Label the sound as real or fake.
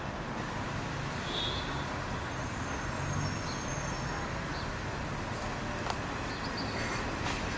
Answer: real